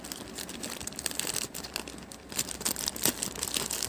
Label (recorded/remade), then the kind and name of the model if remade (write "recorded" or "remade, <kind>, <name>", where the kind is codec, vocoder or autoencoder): recorded